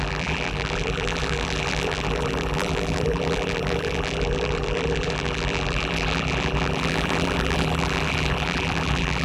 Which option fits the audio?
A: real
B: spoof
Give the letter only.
B